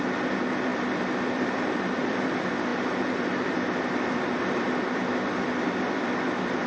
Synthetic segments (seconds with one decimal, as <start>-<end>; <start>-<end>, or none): 0.0-6.7